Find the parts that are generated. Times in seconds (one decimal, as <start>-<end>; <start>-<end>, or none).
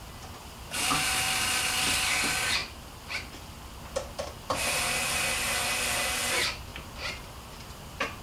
0.4-1.1; 2.6-3.8